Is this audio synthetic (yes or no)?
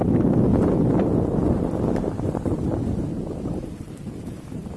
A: no